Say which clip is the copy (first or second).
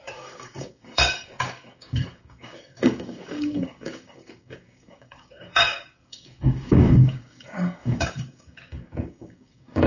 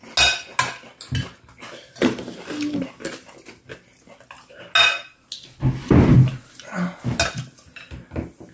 first